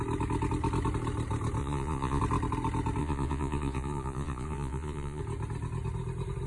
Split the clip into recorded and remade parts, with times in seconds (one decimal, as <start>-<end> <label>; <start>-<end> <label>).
0.0-1.6 recorded; 1.6-2.2 remade; 2.2-3.0 recorded; 3.0-5.2 remade; 5.2-6.5 recorded